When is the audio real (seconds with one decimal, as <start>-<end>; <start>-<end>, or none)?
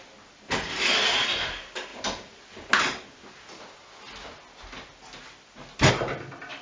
0.0-6.6